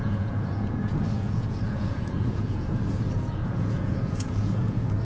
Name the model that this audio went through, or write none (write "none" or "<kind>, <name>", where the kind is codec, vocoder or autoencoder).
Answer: vocoder, Vocos